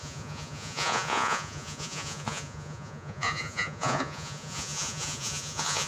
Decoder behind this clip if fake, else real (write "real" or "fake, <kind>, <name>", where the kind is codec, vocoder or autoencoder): fake, vocoder, Vocos